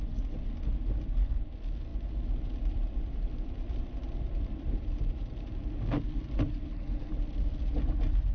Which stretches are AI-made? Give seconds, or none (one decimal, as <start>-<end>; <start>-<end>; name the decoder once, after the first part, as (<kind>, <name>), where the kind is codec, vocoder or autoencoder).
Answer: 1.9-6.3 (vocoder, BigVGAN v2)